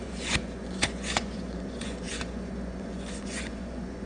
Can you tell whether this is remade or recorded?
remade